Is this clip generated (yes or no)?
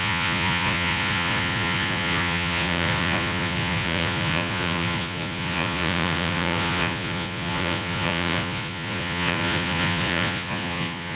yes